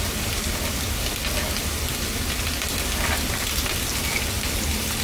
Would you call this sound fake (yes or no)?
no